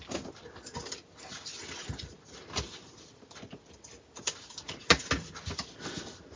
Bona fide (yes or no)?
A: yes